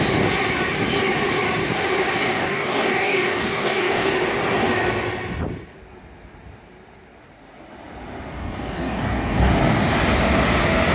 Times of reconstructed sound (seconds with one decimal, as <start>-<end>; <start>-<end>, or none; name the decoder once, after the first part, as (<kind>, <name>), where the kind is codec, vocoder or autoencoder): 2.2-4.1 (codec, DAC); 8.3-9.5